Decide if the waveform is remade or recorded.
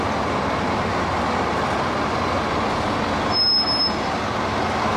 recorded